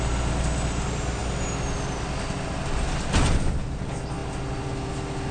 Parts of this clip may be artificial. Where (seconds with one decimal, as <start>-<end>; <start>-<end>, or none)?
none